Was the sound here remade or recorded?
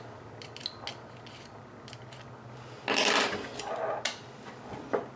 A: recorded